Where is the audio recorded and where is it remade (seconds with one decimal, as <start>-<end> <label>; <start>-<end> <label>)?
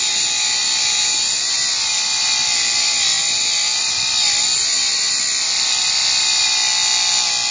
0.0-7.5 recorded